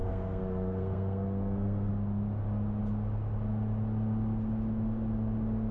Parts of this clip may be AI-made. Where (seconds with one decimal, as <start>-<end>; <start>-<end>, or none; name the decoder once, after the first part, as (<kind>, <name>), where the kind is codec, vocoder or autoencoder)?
0.0-1.9 (codec, SNAC)